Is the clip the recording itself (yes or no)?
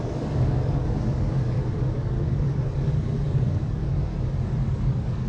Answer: no